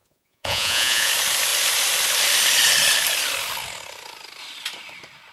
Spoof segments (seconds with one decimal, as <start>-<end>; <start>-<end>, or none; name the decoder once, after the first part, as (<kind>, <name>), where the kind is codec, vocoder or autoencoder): 0.0-1.1 (vocoder, Vocos)